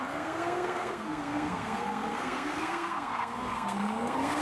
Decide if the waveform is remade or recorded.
remade